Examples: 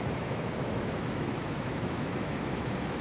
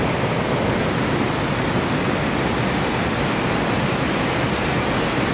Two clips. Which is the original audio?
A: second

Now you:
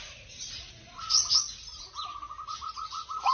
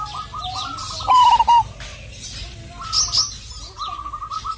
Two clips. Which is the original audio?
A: second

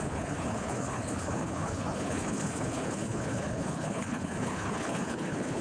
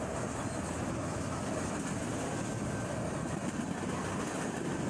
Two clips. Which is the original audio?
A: second